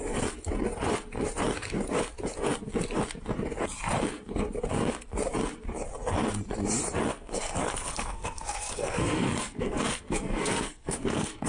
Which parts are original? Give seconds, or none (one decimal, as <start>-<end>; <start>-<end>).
0.0-7.1